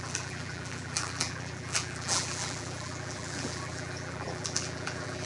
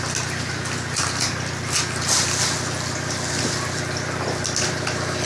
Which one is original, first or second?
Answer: second